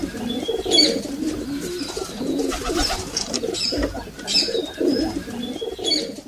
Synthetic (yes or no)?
yes